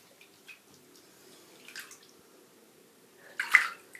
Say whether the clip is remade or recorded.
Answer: recorded